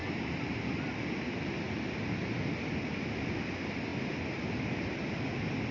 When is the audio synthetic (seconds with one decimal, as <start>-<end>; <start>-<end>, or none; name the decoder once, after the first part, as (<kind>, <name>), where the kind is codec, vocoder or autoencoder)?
none

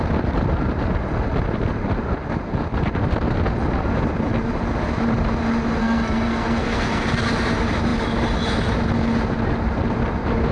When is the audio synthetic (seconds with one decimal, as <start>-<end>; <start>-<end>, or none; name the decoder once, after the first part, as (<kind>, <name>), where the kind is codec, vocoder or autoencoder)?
5.8-7.1 (codec, SNAC)

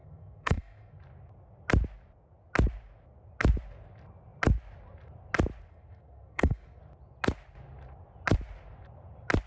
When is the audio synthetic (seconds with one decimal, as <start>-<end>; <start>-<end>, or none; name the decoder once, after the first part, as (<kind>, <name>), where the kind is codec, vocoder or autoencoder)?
0.0-1.0 (codec, SNAC); 5.7-6.8

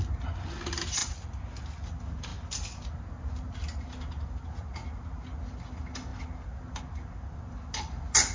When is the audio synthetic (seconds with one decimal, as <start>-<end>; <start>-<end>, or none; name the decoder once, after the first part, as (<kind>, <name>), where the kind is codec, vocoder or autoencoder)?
none